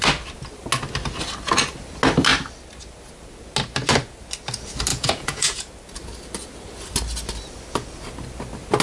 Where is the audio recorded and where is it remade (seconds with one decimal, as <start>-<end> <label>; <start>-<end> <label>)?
0.0-4.9 recorded; 4.9-5.7 remade; 5.7-8.8 recorded